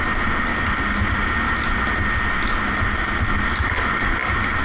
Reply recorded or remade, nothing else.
recorded